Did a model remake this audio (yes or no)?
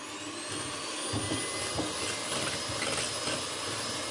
no